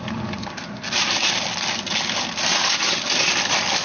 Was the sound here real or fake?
real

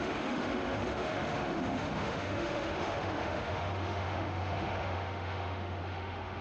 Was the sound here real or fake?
fake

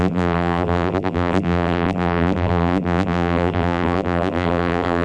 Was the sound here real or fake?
fake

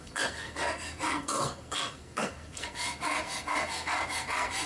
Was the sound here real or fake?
fake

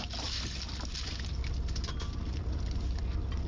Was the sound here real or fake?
real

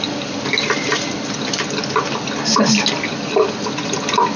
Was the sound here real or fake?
real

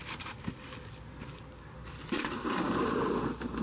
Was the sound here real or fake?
real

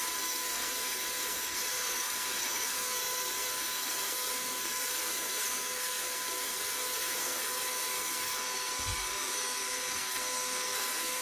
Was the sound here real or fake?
fake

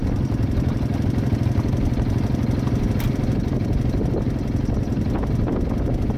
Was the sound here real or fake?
real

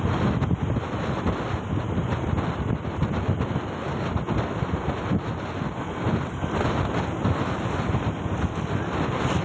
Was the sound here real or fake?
real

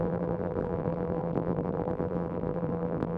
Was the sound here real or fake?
fake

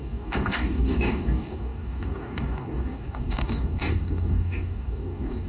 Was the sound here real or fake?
fake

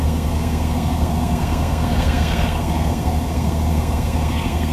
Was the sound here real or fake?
fake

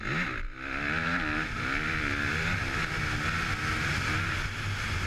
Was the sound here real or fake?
real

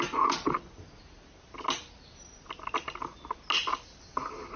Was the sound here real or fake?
real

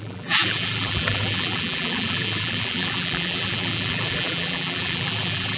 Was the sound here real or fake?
fake